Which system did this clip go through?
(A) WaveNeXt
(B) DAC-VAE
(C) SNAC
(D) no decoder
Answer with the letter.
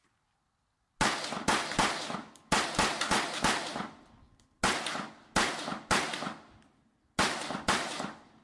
D